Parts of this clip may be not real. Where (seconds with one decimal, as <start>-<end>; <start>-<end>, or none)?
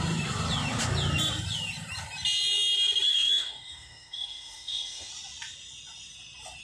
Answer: 3.1-5.1